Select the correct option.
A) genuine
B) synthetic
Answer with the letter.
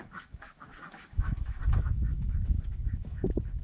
B